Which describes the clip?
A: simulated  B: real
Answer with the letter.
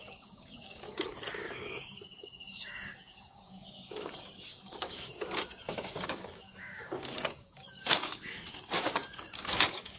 A